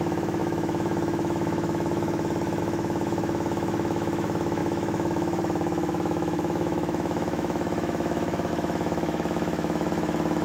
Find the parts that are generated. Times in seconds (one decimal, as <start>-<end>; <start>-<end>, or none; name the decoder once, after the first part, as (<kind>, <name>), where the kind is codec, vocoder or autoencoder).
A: 0.0-10.4 (autoencoder, DAC-VAE)